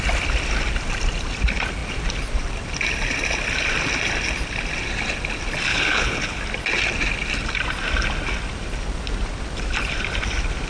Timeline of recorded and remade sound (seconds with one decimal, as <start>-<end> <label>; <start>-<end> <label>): 0.0-5.7 recorded; 5.7-6.4 remade; 6.4-10.7 recorded